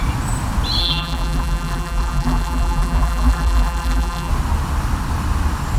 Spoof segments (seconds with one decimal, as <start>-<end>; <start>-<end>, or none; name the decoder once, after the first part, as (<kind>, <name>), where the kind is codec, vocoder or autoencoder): 0.8-4.3 (vocoder, BigVGAN v2)